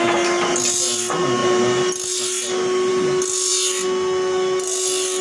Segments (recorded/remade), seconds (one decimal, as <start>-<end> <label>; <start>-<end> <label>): 0.0-5.2 recorded